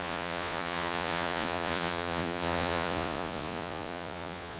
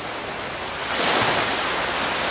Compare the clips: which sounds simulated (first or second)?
first